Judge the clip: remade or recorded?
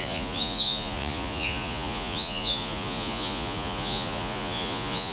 remade